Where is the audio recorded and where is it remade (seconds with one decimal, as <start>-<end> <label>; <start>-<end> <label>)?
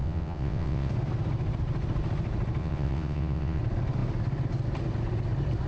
0.0-0.9 remade; 0.9-2.6 recorded; 2.6-3.6 remade; 3.6-5.7 recorded